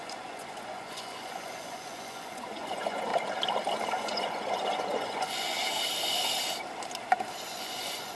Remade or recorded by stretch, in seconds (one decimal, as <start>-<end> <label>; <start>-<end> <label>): 0.0-3.1 remade; 3.1-4.0 recorded; 4.0-5.6 remade; 5.6-7.5 recorded; 7.5-8.1 remade